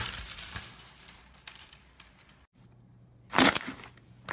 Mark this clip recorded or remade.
remade